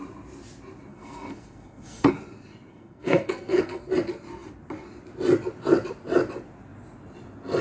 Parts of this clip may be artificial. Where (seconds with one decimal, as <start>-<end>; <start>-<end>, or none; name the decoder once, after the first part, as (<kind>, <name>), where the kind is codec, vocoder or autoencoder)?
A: 0.9-2.1 (codec, SNAC); 2.7-3.9